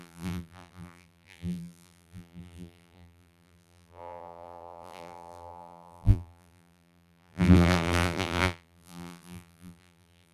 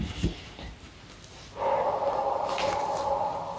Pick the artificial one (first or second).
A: first